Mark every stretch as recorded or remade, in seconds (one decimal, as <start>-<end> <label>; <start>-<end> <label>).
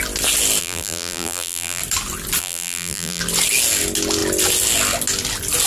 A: 0.0-0.6 recorded; 0.6-1.8 remade; 1.8-2.4 recorded; 2.4-3.2 remade; 3.2-5.7 recorded